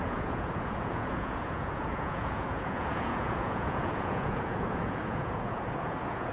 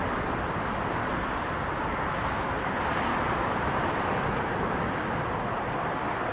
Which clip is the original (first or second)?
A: second